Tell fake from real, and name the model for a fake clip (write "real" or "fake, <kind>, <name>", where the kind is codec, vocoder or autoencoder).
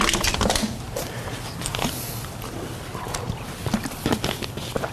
real